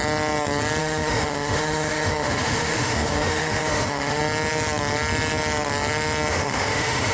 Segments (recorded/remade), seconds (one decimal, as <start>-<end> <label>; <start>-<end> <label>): 0.0-0.8 recorded; 0.8-4.2 remade; 4.2-6.3 recorded; 6.3-7.1 remade